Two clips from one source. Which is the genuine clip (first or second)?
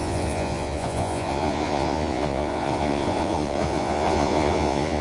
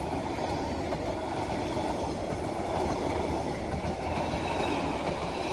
second